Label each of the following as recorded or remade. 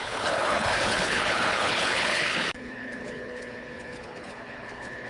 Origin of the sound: remade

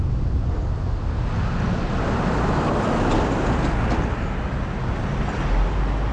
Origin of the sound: recorded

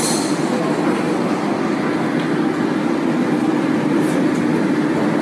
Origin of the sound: recorded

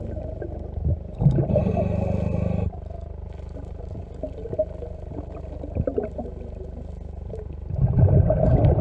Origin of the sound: recorded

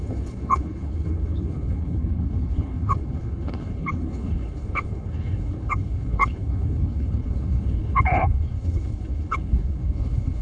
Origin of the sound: remade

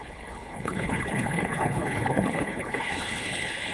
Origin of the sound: remade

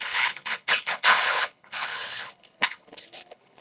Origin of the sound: remade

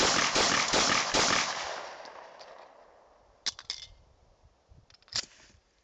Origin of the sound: recorded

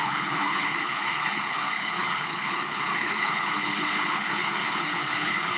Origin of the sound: remade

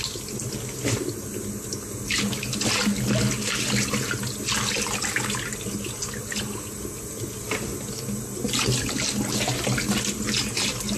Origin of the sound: recorded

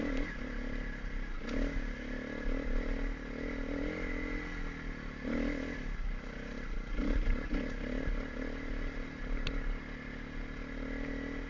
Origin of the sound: recorded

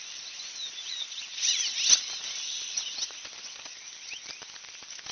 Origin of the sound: recorded